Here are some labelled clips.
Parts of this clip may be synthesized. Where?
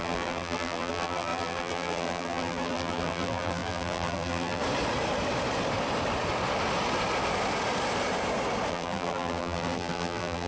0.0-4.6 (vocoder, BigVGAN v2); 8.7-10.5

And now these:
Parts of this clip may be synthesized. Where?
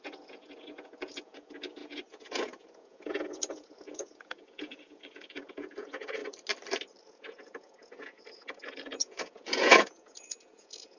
0.0-6.2 (vocoder, Vocos); 7.0-11.0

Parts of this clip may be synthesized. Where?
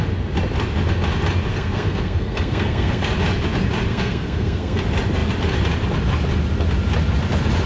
1.5-3.1 (codec, SNAC); 3.9-4.8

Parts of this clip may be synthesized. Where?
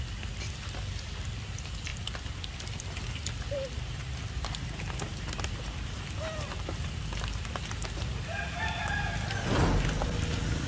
1.9-3.1 (vocoder, BigVGAN v2); 5.1-7.0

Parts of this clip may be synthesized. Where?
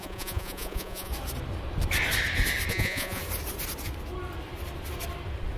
0.0-1.1 (vocoder, Vocos); 2.7-3.2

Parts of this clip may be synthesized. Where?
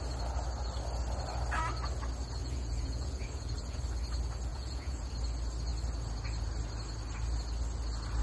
2.4-3.8 (vocoder, Vocos); 4.5-5.1